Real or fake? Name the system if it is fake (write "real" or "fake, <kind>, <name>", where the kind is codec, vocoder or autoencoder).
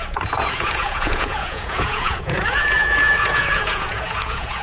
fake, vocoder, Vocos